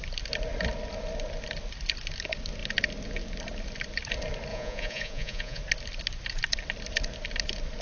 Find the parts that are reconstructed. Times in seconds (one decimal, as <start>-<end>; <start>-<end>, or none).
4.5-5.6